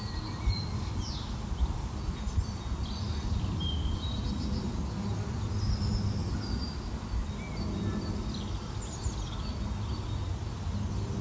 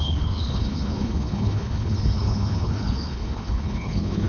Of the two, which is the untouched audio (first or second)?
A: first